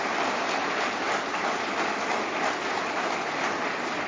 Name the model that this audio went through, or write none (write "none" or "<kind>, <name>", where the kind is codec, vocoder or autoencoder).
none